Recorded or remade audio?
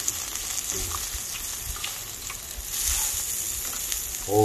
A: recorded